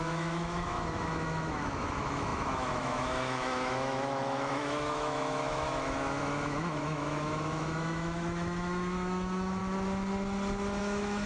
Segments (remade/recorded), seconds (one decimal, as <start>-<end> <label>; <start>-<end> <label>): 0.0-9.6 remade; 9.6-10.8 recorded; 10.8-11.3 remade